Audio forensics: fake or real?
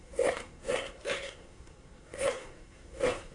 fake